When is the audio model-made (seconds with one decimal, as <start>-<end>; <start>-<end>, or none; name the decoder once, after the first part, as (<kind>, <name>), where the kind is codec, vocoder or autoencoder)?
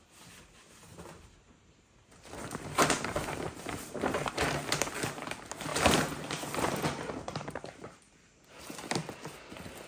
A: 0.9-4.5 (vocoder, BigVGAN v2); 5.7-8.0